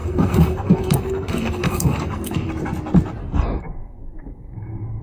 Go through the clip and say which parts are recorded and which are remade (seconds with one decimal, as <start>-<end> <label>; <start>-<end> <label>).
0.0-2.5 remade; 2.5-3.2 recorded; 3.2-5.0 remade